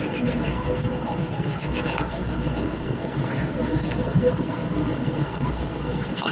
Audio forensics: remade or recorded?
remade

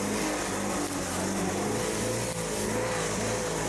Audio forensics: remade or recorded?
recorded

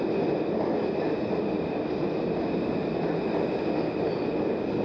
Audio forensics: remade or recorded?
recorded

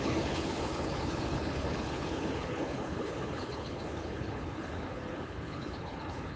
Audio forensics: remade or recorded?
remade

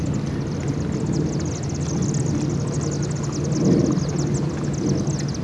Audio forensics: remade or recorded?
recorded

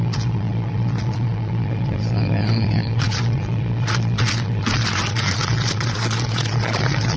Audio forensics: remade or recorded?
remade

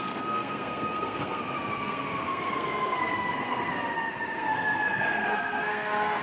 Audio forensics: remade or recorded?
remade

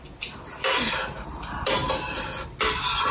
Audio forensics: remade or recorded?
recorded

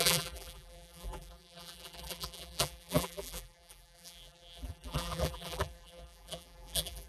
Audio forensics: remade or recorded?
remade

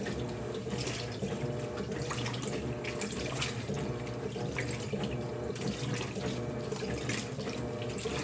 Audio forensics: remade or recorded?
recorded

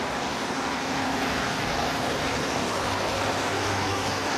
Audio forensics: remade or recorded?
remade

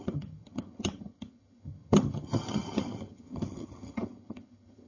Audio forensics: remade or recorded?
remade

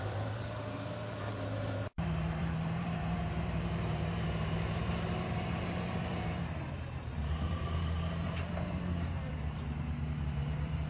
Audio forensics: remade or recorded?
remade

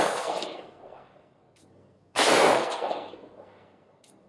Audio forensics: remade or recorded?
remade